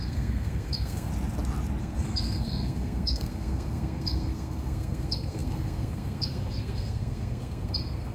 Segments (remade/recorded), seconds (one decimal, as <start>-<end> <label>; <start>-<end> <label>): 0.0-1.1 remade; 1.1-1.8 recorded; 1.8-8.1 remade